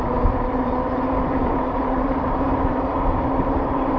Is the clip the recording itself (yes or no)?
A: no